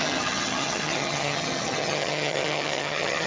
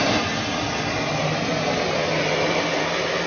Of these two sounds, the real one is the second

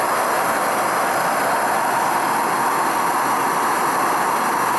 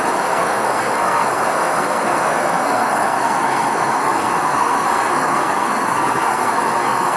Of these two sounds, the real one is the first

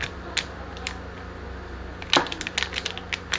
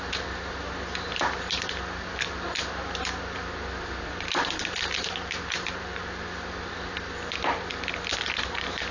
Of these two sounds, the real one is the first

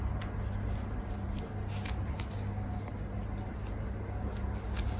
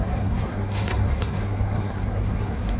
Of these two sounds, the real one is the first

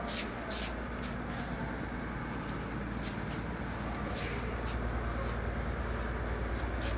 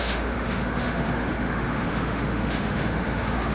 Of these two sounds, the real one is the first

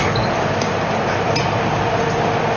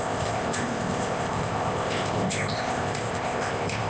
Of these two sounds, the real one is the first